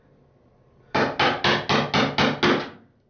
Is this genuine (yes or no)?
yes